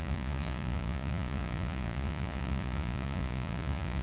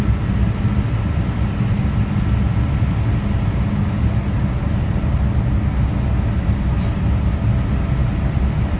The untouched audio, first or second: second